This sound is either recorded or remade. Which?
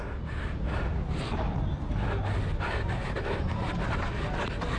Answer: recorded